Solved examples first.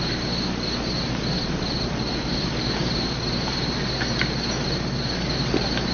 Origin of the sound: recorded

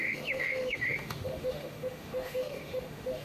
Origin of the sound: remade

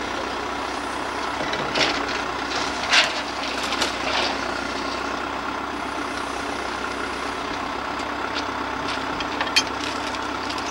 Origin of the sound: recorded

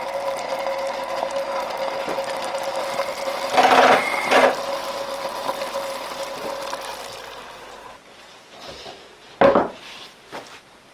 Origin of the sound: recorded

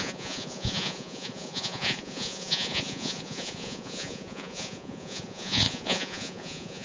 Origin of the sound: remade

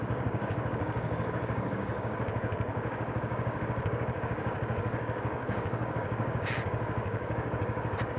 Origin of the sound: remade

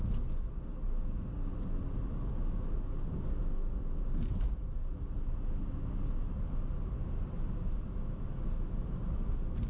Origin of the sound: recorded